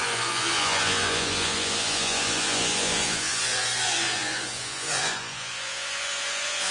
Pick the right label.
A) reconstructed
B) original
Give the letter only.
A